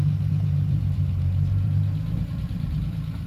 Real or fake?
fake